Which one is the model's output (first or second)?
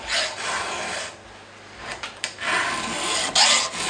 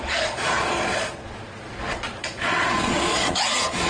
second